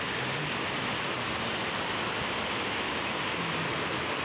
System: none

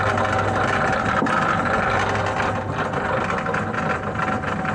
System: none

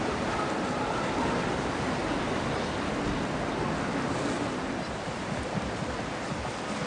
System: none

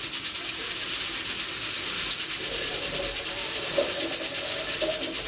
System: none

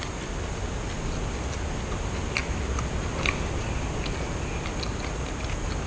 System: none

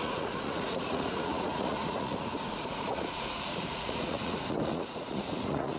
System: vocoder, Vocos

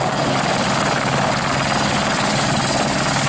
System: none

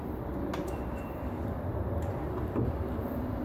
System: none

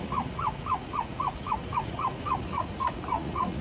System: vocoder, Vocos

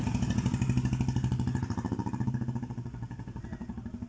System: none